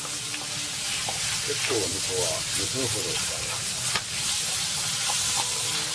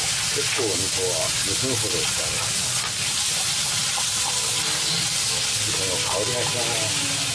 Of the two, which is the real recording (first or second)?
first